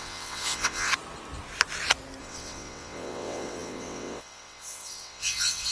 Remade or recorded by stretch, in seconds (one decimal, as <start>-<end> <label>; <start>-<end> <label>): 0.0-0.9 remade; 0.9-2.2 recorded; 2.2-5.7 remade